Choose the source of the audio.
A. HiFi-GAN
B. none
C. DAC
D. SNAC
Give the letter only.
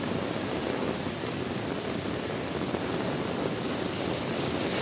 B